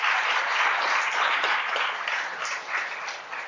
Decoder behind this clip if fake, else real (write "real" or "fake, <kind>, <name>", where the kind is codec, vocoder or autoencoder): real